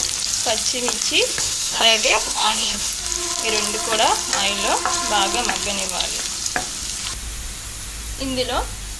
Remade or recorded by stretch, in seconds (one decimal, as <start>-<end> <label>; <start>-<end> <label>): 0.0-1.3 recorded; 1.3-2.9 remade; 2.9-9.0 recorded